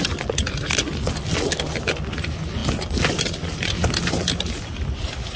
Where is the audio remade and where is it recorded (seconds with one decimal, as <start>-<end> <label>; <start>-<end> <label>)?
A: 0.0-5.4 recorded